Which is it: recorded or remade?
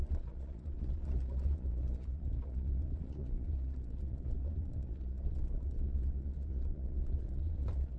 remade